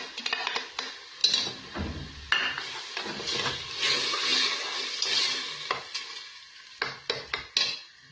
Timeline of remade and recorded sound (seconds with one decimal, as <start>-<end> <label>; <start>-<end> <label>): 0.0-8.1 recorded

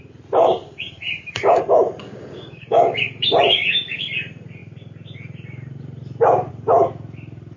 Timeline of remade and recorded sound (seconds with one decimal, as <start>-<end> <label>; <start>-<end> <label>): 0.0-0.4 recorded; 0.4-1.6 remade; 1.6-2.0 recorded; 2.0-4.1 remade; 4.1-7.6 recorded

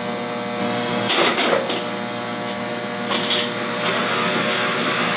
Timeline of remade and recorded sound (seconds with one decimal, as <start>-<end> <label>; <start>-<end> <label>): 0.0-0.6 recorded; 0.6-1.1 remade; 1.1-5.2 recorded

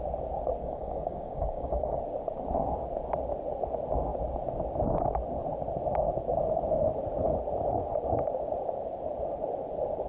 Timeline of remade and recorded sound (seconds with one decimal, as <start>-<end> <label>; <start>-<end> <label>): 0.0-0.6 recorded; 0.6-2.0 remade; 2.0-10.1 recorded

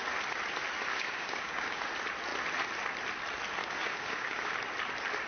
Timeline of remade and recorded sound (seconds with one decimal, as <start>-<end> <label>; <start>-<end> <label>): 0.0-0.9 recorded; 0.9-1.8 remade; 1.8-3.6 recorded; 3.6-4.5 remade; 4.5-5.3 recorded

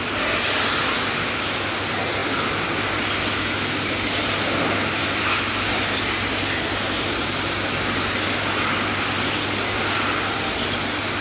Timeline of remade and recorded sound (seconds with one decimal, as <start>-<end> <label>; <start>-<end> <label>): 0.0-11.2 recorded

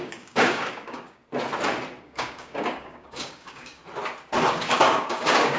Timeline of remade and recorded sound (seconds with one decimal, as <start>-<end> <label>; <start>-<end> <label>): 0.0-1.2 remade; 1.2-2.0 recorded; 2.0-3.8 remade; 3.8-4.5 recorded; 4.5-5.6 remade

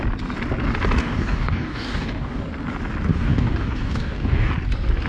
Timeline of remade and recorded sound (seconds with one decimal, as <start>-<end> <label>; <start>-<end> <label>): 0.0-1.0 recorded; 1.0-2.4 remade; 2.4-3.1 recorded; 3.1-4.5 remade; 4.5-5.1 recorded